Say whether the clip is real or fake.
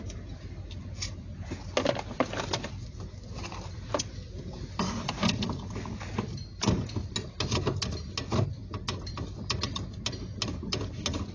real